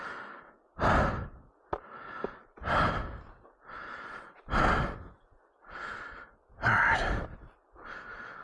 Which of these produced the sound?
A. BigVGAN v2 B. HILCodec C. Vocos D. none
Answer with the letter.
D